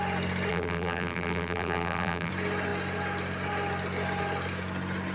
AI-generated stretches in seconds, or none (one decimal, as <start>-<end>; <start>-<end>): 0.5-2.3